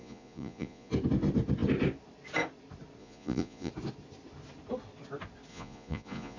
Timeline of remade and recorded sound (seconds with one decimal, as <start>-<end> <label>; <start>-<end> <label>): 0.0-0.9 remade; 0.9-3.0 recorded; 3.0-3.7 remade; 3.7-5.5 recorded; 5.5-6.4 remade